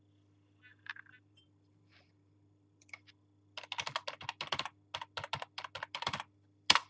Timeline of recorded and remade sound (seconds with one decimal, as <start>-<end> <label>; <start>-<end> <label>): 0.0-0.7 recorded; 0.7-2.9 remade; 2.9-6.9 recorded